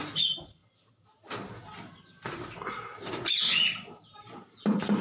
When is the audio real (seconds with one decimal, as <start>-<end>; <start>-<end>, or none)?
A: 0.6-3.4

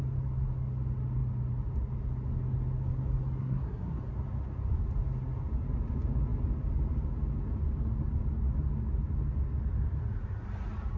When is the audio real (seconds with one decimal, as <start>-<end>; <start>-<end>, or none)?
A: 0.0-3.4; 4.0-11.0

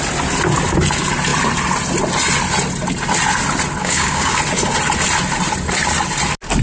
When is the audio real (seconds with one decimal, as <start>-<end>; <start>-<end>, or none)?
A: 0.0-3.8; 4.4-6.6

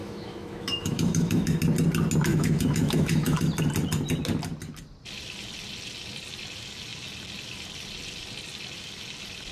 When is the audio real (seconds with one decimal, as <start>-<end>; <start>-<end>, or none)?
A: 1.6-2.3; 3.4-9.5

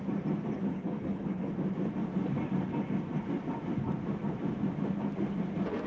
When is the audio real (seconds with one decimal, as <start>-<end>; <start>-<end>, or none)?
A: 0.0-0.7; 1.5-5.9